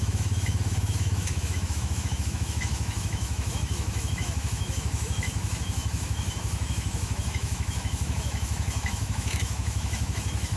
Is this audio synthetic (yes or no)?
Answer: yes